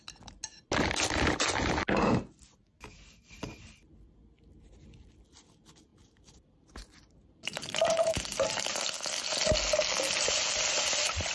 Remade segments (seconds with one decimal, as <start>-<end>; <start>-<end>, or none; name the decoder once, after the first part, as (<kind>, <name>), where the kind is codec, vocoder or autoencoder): 5.9-8.8 (vocoder, BigVGAN v2)